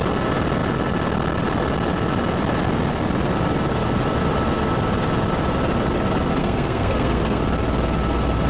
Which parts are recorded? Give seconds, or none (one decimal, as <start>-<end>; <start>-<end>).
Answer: 0.0-6.4; 7.4-8.5